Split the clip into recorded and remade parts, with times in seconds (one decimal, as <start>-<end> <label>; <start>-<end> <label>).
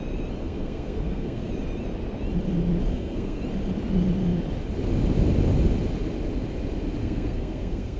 0.0-0.4 recorded; 0.4-1.5 remade; 1.5-2.9 recorded; 2.9-3.4 remade; 3.4-7.0 recorded; 7.0-8.0 remade